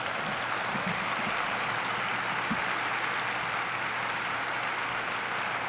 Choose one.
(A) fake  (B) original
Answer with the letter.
B